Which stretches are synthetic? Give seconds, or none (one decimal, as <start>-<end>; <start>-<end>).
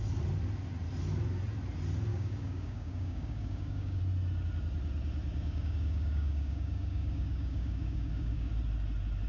2.1-4.0; 5.3-8.5